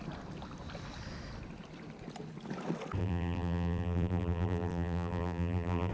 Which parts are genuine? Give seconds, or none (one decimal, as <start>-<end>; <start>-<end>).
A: 0.0-3.0